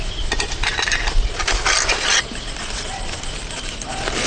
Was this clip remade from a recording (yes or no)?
no